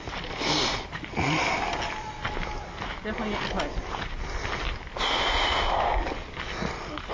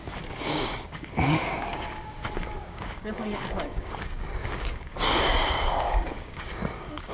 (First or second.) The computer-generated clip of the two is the second